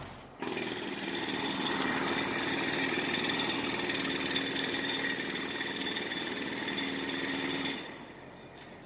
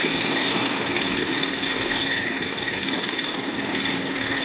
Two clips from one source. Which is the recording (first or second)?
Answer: first